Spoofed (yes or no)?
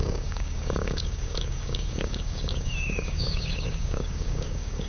yes